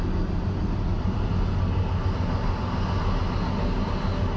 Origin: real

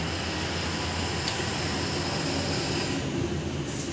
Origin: real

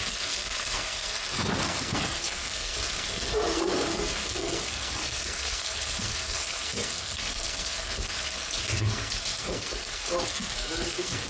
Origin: fake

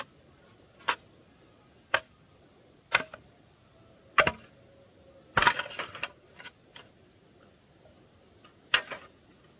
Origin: real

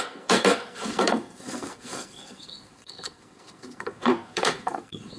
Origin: fake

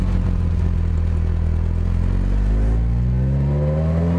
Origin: real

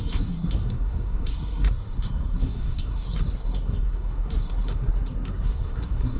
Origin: fake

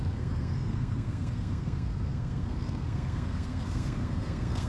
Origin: fake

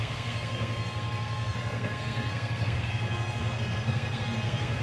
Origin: fake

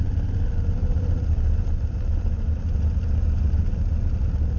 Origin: real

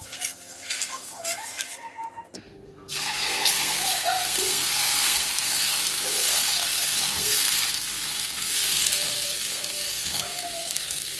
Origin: fake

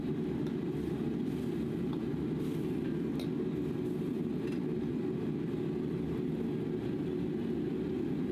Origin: real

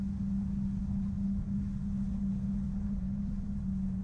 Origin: real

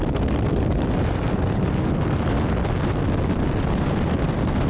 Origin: real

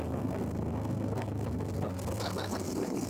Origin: fake